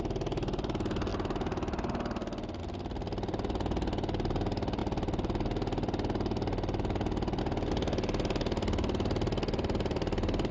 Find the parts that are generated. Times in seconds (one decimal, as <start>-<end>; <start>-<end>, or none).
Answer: none